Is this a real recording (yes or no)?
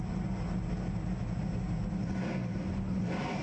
yes